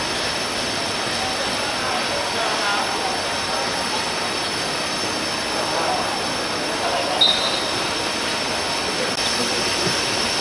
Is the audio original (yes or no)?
yes